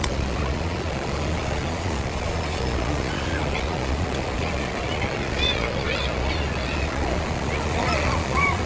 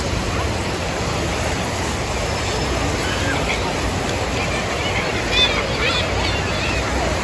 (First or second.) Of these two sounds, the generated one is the first